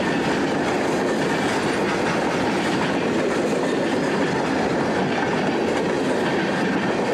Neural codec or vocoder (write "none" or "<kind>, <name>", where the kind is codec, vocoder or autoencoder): none